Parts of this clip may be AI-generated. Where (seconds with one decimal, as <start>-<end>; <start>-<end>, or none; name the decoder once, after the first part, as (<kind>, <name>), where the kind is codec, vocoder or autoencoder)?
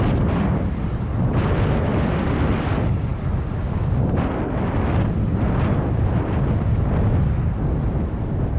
none